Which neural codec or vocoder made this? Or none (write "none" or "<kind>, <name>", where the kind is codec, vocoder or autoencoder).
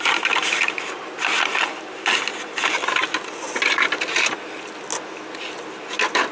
none